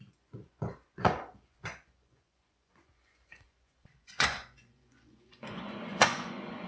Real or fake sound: fake